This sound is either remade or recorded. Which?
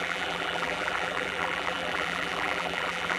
remade